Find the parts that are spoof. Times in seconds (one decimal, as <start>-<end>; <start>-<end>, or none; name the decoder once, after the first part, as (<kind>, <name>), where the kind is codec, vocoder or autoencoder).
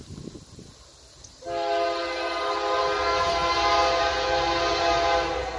none